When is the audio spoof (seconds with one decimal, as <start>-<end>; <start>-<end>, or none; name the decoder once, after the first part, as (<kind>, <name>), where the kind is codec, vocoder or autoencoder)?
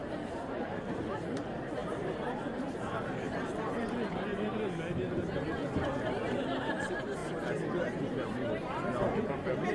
0.0-4.3 (vocoder, BigVGAN v2); 4.9-7.2